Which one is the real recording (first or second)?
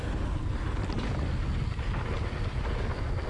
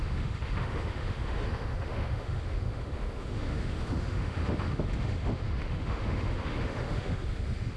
first